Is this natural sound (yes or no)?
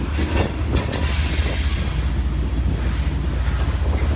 yes